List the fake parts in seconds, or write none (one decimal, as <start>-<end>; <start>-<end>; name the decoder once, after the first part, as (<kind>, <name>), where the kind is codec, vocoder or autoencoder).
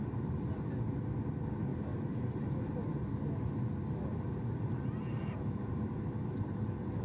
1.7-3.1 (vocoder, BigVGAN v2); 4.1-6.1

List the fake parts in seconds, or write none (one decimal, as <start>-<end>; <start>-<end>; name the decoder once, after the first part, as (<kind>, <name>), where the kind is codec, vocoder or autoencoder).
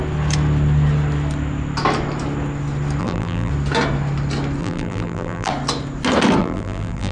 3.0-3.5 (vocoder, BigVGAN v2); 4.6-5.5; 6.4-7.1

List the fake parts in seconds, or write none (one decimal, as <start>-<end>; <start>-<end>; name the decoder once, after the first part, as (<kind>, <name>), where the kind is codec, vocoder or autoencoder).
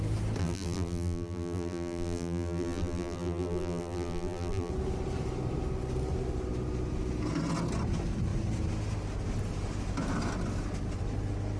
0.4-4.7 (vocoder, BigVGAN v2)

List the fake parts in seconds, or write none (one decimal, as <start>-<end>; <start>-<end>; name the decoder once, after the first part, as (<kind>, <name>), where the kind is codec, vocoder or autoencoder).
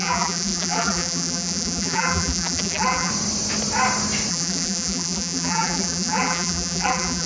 0.0-3.1 (vocoder, BigVGAN v2); 4.3-7.3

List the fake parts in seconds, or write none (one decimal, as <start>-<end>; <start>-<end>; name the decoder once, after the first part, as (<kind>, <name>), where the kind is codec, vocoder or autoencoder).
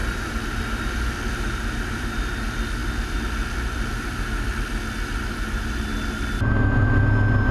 none